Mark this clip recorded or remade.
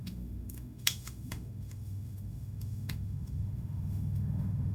remade